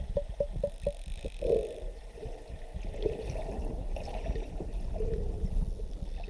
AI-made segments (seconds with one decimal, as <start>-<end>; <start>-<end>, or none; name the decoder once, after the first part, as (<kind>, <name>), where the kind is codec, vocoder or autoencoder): none